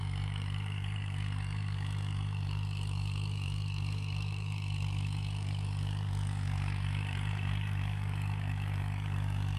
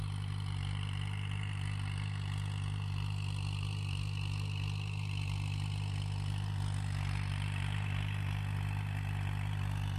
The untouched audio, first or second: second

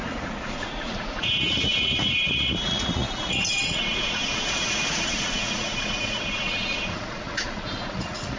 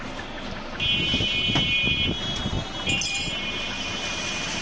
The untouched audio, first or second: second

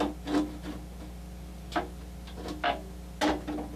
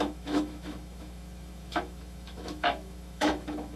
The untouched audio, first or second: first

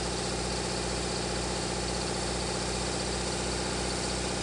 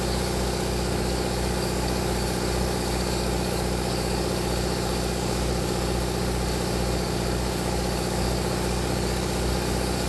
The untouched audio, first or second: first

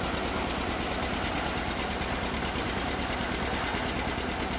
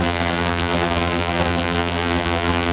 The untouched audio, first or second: first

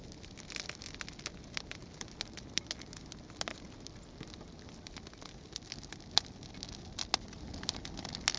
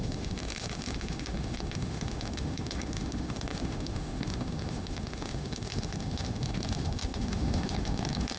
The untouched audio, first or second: first